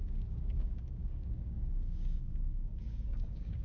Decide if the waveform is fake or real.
fake